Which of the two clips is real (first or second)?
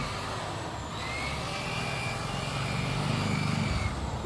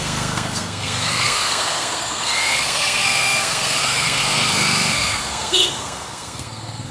first